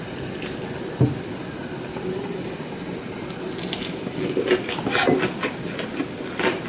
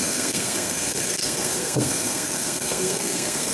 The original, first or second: first